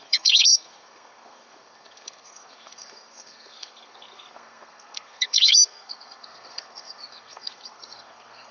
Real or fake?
fake